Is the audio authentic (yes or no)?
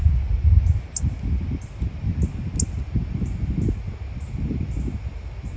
yes